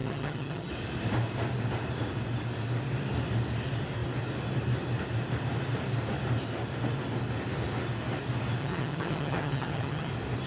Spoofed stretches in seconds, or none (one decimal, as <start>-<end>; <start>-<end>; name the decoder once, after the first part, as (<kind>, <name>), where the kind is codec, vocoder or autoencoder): 0.0-0.7 (vocoder, HiFi-GAN); 8.6-10.1